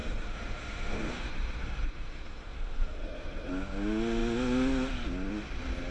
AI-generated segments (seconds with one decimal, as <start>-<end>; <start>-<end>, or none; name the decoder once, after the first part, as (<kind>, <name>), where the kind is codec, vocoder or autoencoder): 0.0-3.5 (autoencoder, DAC-VAE)